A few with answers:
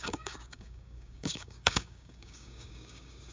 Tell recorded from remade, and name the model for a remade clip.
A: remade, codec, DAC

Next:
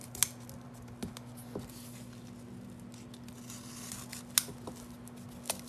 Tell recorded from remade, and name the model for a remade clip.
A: recorded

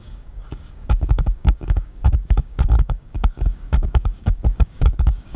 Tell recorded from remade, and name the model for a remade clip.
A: remade, codec, DAC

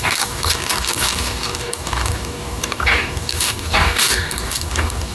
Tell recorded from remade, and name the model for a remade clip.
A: remade, codec, DAC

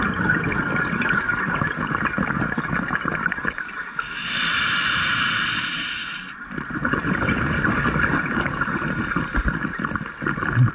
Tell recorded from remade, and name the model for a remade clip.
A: recorded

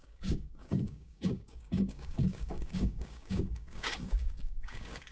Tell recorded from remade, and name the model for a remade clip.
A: remade, codec, DAC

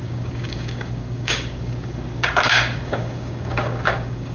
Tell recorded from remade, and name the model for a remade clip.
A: remade, codec, DAC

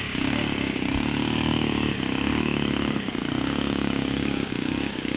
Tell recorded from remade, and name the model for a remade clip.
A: remade, codec, DAC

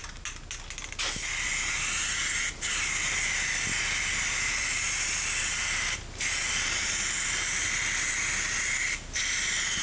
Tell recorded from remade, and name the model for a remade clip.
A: recorded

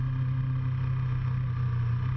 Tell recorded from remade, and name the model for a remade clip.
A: recorded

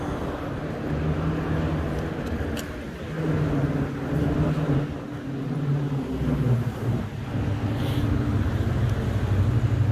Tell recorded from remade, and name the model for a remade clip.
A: recorded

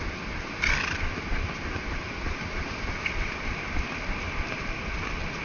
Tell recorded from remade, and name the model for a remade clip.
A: recorded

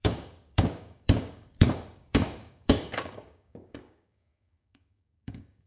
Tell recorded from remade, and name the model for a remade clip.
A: remade, codec, DAC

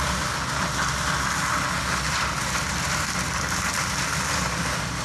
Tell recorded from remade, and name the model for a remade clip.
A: recorded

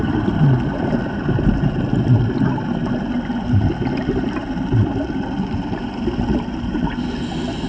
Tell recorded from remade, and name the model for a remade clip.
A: recorded